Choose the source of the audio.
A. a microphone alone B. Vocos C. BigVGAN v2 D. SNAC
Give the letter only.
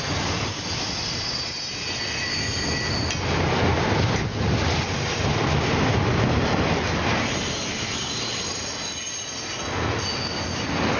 A